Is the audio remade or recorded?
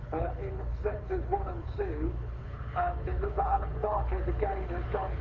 remade